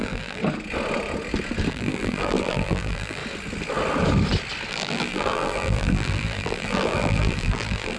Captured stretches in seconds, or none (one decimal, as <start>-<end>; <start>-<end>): 0.4-1.7; 3.2-4.7